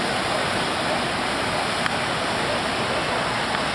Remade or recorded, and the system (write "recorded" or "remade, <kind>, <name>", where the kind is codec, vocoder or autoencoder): recorded